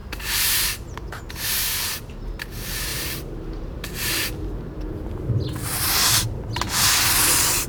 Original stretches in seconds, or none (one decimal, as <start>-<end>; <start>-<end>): 1.3-2.9; 4.1-7.7